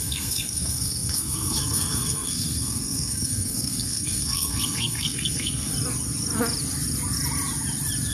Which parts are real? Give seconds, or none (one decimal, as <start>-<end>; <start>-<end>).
5.7-8.1